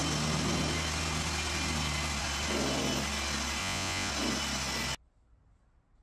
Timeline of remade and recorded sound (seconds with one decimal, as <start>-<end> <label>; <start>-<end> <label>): 0.0-3.6 recorded; 3.6-4.1 remade; 4.1-6.0 recorded